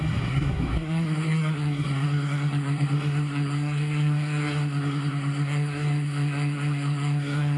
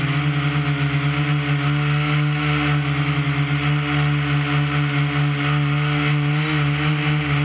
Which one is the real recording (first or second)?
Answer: second